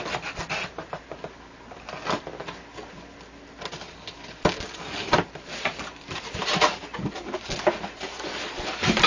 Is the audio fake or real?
real